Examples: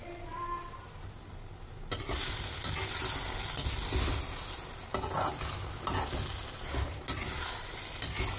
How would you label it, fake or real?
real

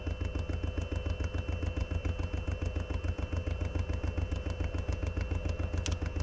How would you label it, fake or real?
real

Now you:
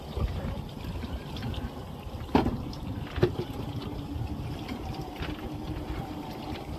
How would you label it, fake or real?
real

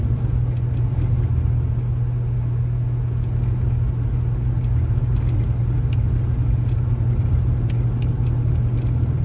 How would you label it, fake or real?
real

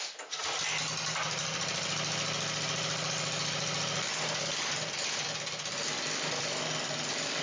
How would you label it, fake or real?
real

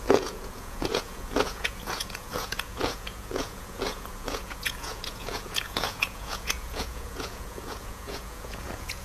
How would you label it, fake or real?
fake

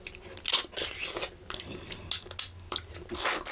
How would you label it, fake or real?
real